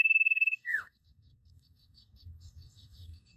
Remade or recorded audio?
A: remade